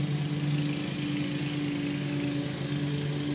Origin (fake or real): real